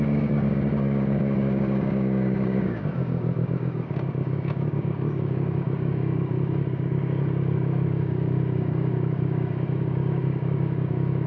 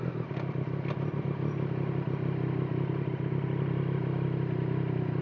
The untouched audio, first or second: second